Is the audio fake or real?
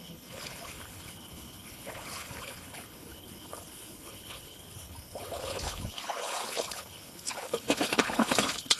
fake